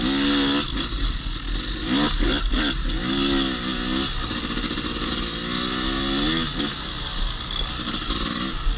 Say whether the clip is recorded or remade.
recorded